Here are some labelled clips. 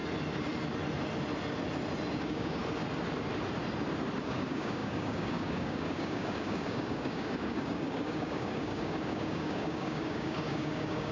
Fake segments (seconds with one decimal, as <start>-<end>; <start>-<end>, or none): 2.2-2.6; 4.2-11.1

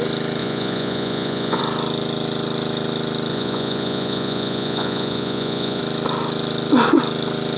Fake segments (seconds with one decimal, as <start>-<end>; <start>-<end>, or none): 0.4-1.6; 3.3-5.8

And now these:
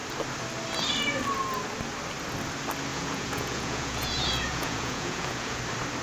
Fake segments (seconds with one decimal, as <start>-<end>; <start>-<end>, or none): 2.9-5.6